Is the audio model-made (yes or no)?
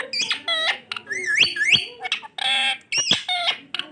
no